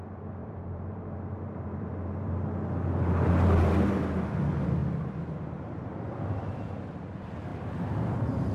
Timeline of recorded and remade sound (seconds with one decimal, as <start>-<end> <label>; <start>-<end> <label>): 0.0-0.4 recorded; 0.4-2.3 remade; 2.3-8.5 recorded